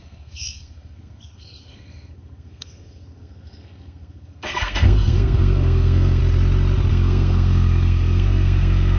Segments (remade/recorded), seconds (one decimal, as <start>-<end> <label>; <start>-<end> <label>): 0.0-6.2 remade; 6.2-6.9 recorded; 6.9-9.0 remade